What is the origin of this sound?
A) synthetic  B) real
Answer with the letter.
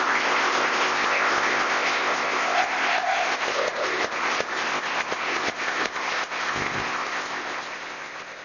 A